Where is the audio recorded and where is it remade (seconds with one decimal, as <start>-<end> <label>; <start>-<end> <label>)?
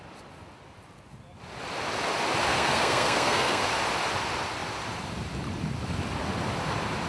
0.0-2.5 recorded; 2.5-3.6 remade; 3.6-7.1 recorded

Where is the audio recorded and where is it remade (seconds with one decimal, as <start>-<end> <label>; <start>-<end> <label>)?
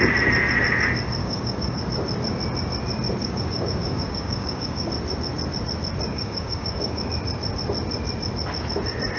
0.0-1.2 recorded; 1.2-1.8 remade; 1.8-3.2 recorded; 3.2-4.9 remade; 4.9-6.1 recorded; 6.1-7.1 remade; 7.1-9.2 recorded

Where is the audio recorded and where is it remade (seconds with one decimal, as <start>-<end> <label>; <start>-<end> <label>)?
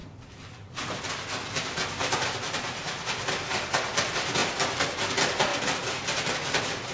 0.0-1.2 remade; 1.2-5.5 recorded; 5.5-6.3 remade; 6.3-6.9 recorded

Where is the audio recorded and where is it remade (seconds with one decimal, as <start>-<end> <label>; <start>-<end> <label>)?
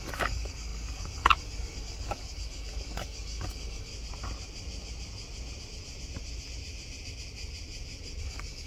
0.0-3.9 remade; 3.9-8.2 recorded; 8.2-8.7 remade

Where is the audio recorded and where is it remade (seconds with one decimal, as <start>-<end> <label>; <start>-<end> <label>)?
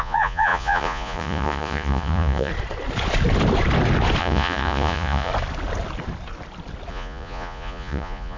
0.0-2.5 remade; 2.5-4.2 recorded; 4.2-5.3 remade; 5.3-6.9 recorded; 6.9-8.4 remade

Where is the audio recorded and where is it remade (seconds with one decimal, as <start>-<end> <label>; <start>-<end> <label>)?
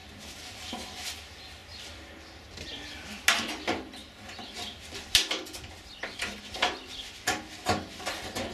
0.0-8.5 recorded